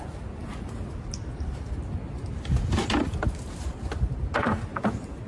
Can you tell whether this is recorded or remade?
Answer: recorded